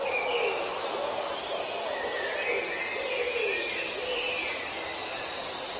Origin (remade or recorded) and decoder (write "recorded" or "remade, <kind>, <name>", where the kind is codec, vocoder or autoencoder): recorded